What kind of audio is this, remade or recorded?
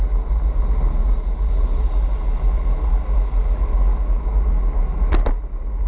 recorded